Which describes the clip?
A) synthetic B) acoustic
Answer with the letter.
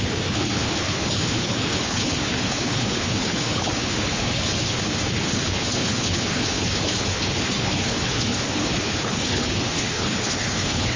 A